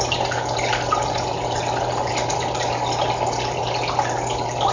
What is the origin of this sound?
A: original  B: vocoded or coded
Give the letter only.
A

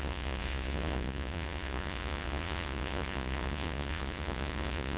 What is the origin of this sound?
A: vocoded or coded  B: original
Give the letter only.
A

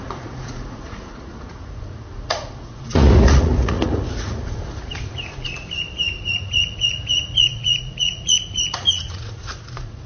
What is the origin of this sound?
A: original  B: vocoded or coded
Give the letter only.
B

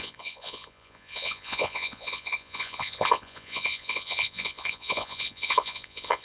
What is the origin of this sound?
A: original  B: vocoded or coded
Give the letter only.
B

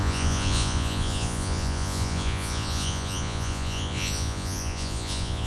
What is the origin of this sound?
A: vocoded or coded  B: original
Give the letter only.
A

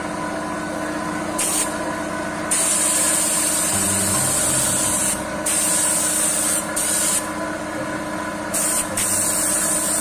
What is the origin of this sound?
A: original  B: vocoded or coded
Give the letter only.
A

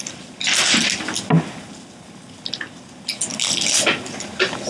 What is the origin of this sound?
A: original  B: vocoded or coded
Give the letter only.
A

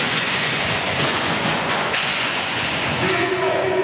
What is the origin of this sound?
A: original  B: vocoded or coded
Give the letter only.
B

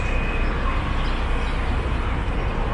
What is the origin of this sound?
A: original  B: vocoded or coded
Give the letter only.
A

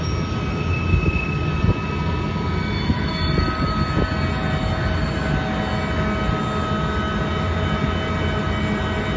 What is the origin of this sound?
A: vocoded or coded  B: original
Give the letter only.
B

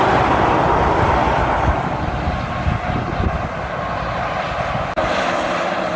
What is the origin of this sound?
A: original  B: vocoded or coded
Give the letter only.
A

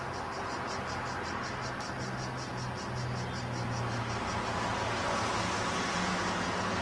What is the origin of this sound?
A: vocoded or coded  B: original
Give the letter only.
B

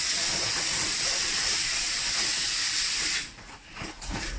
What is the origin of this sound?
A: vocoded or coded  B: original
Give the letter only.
A